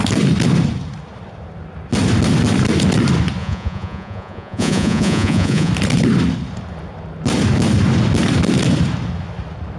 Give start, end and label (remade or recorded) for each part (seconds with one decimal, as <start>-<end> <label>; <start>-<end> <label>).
0.0-3.4 recorded; 3.4-5.7 remade; 5.7-9.8 recorded